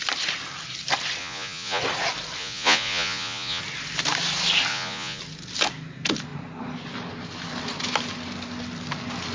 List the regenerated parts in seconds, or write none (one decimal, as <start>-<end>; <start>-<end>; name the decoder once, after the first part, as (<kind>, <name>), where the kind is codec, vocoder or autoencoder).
1.2-1.8 (vocoder, Vocos); 2.4-3.6; 4.7-5.2